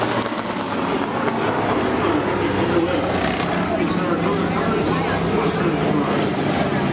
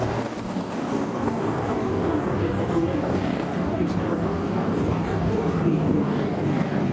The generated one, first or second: second